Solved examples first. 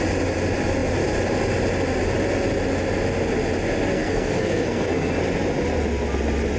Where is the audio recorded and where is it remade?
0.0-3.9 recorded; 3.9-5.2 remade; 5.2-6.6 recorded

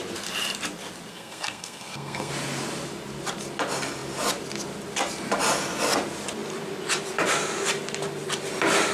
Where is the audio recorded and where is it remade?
0.0-1.1 recorded; 1.1-2.3 remade; 2.3-8.9 recorded

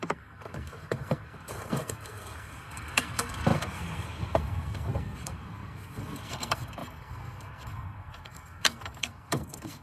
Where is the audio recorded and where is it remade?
0.0-9.8 remade

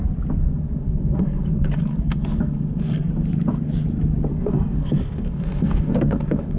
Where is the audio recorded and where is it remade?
0.0-0.4 recorded; 0.4-3.1 remade; 3.1-4.3 recorded; 4.3-6.6 remade

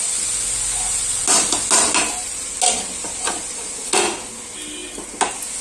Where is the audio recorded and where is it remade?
0.0-5.6 recorded

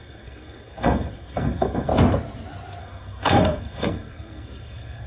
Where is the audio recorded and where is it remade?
0.0-1.9 remade; 1.9-2.8 recorded; 2.8-5.1 remade

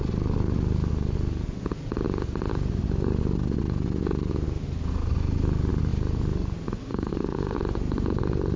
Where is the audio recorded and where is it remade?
0.0-6.9 recorded; 6.9-7.6 remade; 7.6-8.6 recorded

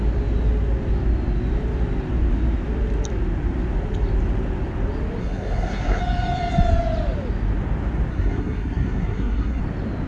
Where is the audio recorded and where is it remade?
0.0-5.2 recorded; 5.2-6.0 remade; 6.0-8.1 recorded; 8.1-9.6 remade; 9.6-10.1 recorded